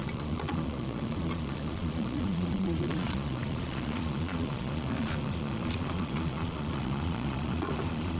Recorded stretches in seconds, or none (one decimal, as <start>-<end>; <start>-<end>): none